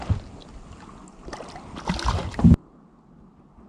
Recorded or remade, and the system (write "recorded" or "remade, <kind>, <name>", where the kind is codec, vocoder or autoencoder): recorded